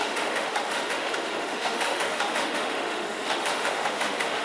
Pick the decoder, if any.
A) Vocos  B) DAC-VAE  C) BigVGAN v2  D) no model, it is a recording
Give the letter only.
B